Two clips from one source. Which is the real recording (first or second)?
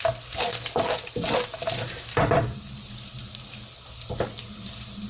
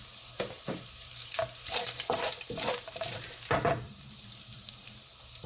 first